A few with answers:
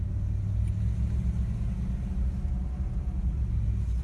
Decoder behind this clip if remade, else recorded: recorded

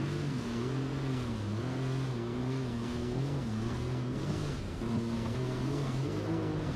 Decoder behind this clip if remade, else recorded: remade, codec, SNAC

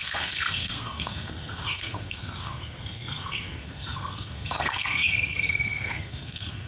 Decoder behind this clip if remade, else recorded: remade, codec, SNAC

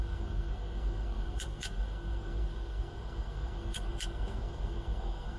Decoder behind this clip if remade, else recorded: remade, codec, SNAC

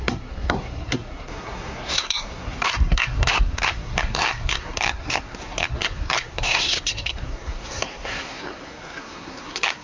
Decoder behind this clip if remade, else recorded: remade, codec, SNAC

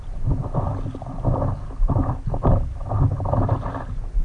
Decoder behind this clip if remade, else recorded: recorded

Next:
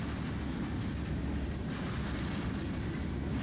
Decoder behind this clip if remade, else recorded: recorded